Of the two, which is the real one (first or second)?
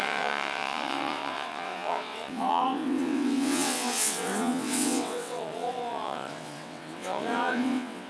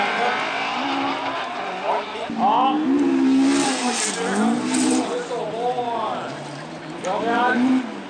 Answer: second